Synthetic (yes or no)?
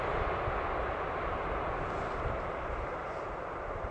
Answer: no